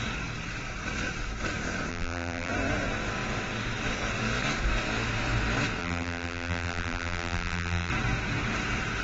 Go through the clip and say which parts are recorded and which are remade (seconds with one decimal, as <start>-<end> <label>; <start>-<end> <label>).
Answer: 0.0-1.9 recorded; 1.9-2.5 remade; 2.5-5.8 recorded; 5.8-7.9 remade; 7.9-9.0 recorded